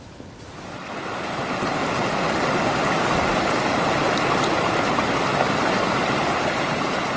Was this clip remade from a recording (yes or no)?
no